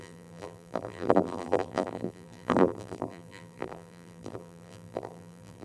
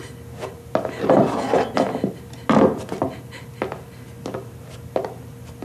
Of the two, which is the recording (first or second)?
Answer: second